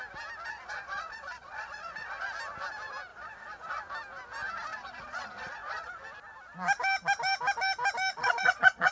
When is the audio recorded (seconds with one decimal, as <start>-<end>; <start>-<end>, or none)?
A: 0.0-0.5; 2.1-3.1; 3.8-4.7; 6.0-8.1